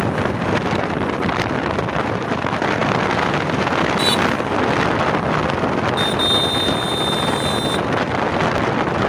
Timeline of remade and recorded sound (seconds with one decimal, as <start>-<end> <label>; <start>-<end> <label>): 0.0-9.1 recorded